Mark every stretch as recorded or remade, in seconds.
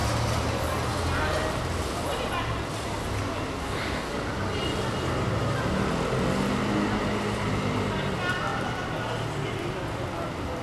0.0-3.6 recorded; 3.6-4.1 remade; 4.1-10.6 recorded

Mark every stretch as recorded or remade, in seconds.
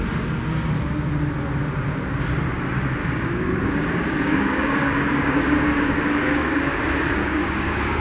0.0-3.0 recorded; 3.0-6.8 remade; 6.8-7.2 recorded; 7.2-8.0 remade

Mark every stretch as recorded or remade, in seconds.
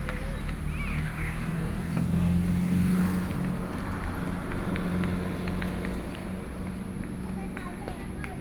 0.0-0.9 recorded; 0.9-3.0 remade; 3.0-8.4 recorded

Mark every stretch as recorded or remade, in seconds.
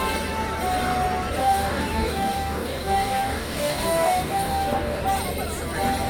0.0-1.4 recorded; 1.4-5.0 remade; 5.0-6.1 recorded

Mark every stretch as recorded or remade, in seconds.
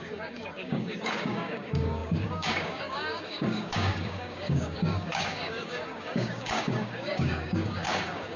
0.0-8.4 remade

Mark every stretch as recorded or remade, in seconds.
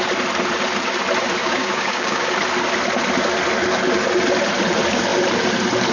0.0-1.4 recorded; 1.4-2.3 remade; 2.3-5.9 recorded